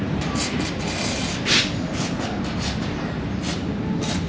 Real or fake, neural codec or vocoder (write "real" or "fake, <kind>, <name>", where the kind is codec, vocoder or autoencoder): real